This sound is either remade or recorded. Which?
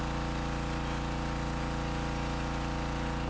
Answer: recorded